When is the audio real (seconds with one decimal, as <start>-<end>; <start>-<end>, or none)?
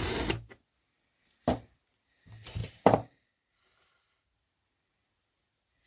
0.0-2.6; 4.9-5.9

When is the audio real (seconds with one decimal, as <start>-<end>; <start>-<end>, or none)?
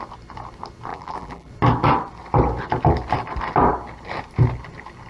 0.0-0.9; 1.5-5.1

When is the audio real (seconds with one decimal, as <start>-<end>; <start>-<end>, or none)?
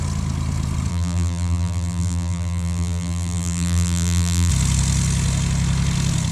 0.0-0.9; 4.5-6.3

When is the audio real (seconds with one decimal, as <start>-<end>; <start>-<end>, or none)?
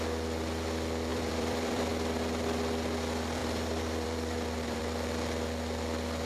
0.0-1.1; 1.9-3.4; 4.8-6.3